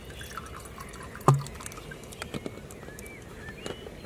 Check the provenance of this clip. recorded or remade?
recorded